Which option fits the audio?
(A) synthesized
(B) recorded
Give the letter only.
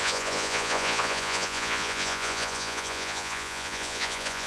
A